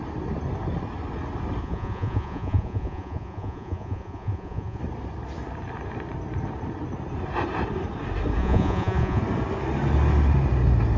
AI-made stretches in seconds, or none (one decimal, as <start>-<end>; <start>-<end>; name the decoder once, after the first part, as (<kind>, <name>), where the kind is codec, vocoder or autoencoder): 1.6-4.8 (vocoder, Vocos); 8.4-9.2